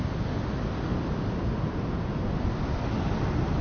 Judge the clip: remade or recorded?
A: recorded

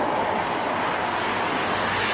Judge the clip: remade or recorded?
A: recorded